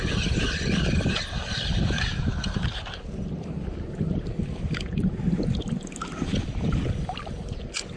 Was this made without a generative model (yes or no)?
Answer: yes